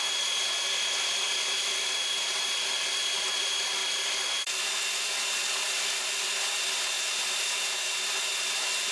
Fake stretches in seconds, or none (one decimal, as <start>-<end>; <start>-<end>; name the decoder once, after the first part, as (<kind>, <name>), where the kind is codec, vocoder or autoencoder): none